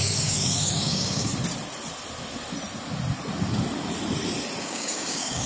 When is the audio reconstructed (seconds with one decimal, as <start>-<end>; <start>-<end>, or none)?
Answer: 0.0-1.3; 4.6-5.5